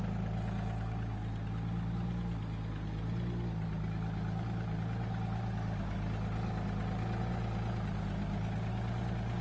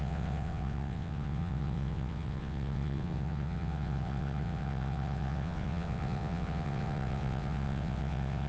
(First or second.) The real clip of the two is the first